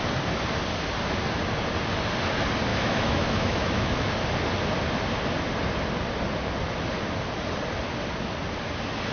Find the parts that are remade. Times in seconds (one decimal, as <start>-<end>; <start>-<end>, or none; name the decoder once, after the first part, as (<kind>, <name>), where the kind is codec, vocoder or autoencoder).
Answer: 2.7-4.1 (autoencoder, DAC-VAE)